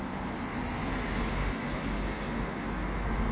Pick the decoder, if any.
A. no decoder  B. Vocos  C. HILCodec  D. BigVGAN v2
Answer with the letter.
A